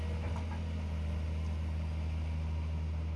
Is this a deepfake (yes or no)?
no